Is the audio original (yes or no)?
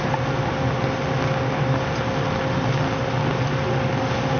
yes